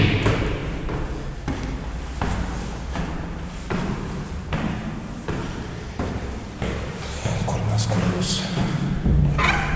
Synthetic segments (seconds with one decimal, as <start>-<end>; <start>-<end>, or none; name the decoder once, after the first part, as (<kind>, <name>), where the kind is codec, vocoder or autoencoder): 0.0-0.6 (vocoder, BigVGAN v2); 3.1-9.8